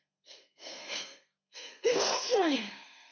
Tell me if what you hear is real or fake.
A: fake